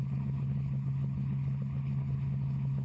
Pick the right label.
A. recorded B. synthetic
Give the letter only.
B